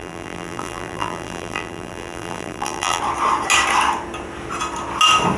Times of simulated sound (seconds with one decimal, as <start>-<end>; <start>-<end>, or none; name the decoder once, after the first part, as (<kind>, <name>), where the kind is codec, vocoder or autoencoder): 0.0-3.0 (vocoder, BigVGAN v2)